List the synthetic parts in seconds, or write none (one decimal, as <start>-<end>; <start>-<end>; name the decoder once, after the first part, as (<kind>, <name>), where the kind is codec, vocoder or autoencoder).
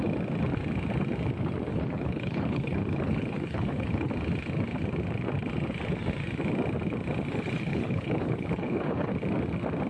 1.7-4.1 (codec, HILCodec); 7.7-9.1